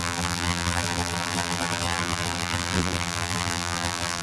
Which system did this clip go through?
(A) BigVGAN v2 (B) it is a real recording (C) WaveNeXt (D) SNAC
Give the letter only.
A